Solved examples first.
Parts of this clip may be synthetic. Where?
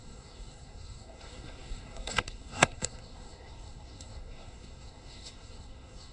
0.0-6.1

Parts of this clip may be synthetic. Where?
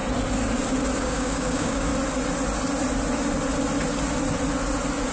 1.0-1.9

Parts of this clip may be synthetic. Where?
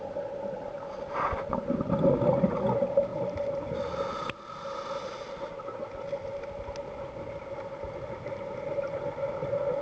none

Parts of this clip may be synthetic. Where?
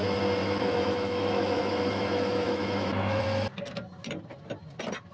0.4-3.2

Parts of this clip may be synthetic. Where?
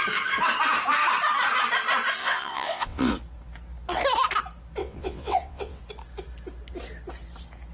2.2-3.1; 4.8-5.8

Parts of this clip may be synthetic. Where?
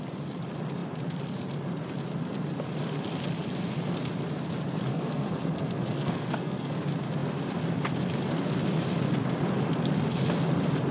4.9-6.7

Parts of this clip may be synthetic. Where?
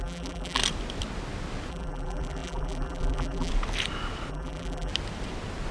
0.0-0.6; 1.7-3.5; 4.3-4.9